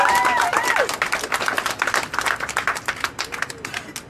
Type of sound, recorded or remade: recorded